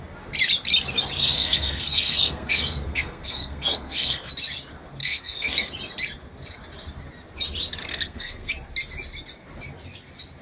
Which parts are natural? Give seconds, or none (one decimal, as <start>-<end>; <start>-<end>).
0.0-1.2; 4.3-5.0; 5.7-7.9; 8.5-10.4